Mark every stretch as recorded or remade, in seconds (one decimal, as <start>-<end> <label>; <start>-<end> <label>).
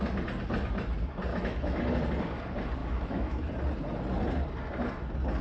0.0-1.3 recorded; 1.3-1.8 remade; 1.8-2.8 recorded; 2.8-3.5 remade; 3.5-5.4 recorded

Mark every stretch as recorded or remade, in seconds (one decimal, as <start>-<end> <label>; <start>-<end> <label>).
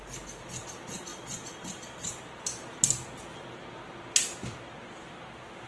0.0-5.7 recorded